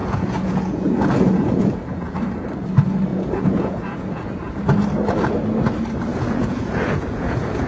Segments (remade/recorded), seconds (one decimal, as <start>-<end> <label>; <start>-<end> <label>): 0.0-2.2 remade; 2.2-3.1 recorded; 3.1-4.5 remade; 4.5-6.1 recorded; 6.1-7.7 remade